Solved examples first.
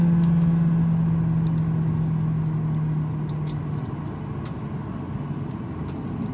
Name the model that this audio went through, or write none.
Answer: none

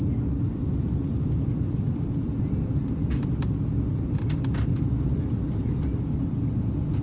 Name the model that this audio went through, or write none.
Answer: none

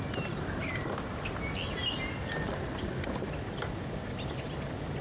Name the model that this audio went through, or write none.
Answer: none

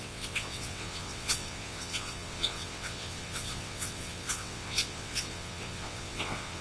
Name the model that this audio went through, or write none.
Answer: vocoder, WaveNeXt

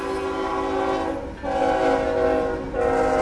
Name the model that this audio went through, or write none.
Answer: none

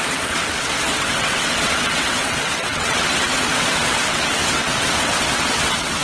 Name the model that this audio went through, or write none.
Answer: vocoder, WaveNeXt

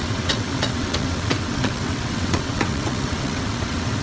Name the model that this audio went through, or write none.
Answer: vocoder, WaveNeXt